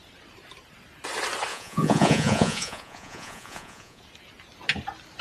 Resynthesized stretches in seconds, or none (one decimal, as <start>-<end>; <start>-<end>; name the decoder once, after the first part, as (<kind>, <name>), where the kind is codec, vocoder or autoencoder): 1.5-4.0 (vocoder, Vocos)